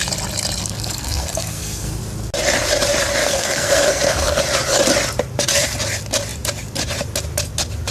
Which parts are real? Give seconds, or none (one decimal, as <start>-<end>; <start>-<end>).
0.0-0.6; 2.0-3.2; 4.4-7.9